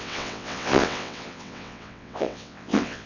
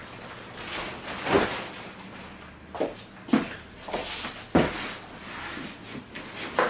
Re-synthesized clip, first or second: first